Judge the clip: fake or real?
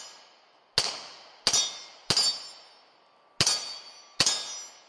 real